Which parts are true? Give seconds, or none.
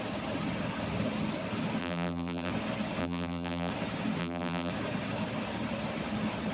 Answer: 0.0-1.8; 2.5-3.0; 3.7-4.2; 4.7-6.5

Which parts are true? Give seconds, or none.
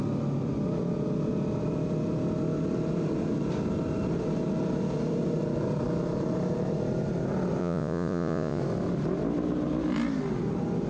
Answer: 0.0-7.6; 8.6-10.9